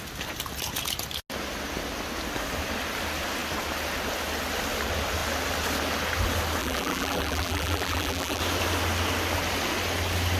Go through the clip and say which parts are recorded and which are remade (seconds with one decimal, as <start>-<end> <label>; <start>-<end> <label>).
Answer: 0.0-6.6 recorded; 6.6-8.4 remade; 8.4-10.4 recorded